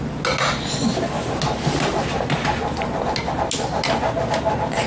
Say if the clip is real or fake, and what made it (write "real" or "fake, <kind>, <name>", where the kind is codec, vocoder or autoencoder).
real